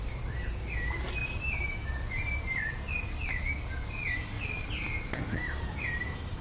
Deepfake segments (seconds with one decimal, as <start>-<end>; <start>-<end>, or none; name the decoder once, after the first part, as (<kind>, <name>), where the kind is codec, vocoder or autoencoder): none